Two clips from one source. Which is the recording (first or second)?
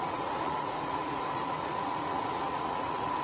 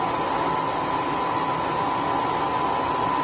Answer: second